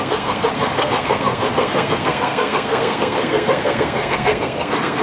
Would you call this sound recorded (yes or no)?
no